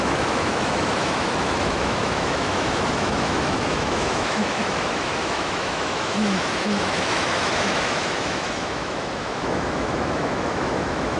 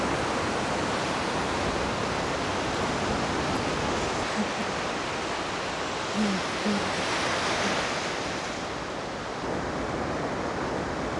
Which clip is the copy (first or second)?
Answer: first